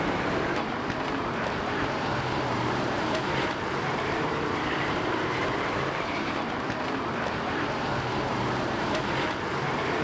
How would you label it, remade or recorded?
remade